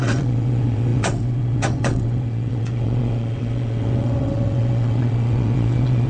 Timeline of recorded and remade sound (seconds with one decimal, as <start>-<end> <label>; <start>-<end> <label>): 0.0-6.1 remade